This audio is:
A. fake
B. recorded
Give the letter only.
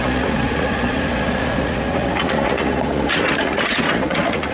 A